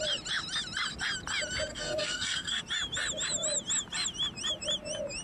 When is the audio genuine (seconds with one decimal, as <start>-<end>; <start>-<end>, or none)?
0.0-1.7; 2.6-5.2